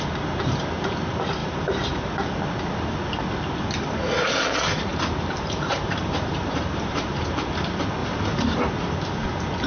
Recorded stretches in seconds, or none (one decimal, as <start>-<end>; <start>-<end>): 0.0-1.4; 2.1-4.9; 7.2-8.0; 8.6-9.7